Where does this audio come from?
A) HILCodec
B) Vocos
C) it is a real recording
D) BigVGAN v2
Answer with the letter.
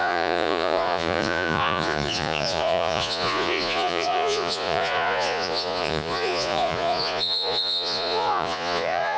B